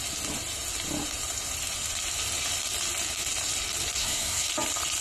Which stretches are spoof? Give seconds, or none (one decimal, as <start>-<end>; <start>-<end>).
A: 4.0-4.5